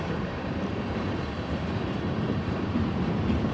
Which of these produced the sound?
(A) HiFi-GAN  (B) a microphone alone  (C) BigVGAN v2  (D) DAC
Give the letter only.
C